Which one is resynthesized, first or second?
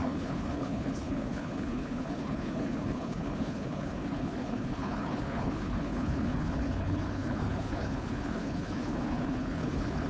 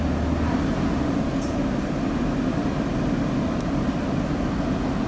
first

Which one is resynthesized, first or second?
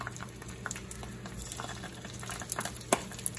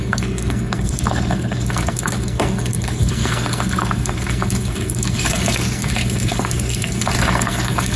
second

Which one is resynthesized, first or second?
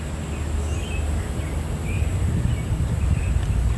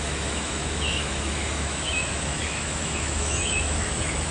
second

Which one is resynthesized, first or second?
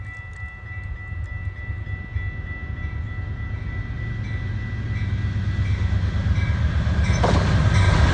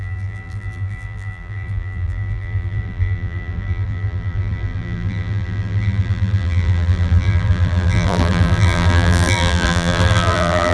second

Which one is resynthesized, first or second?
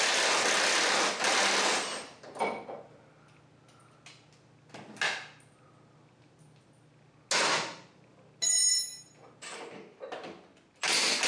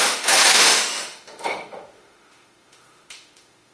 second